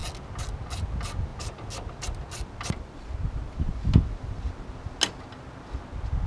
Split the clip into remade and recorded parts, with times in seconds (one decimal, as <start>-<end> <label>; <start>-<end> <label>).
0.0-6.3 recorded